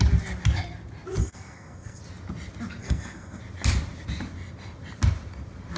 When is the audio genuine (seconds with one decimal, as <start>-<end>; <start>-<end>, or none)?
0.0-1.2; 2.0-2.8; 3.4-5.8